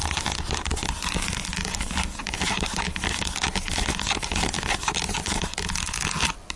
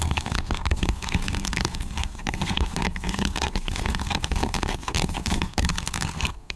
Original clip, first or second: first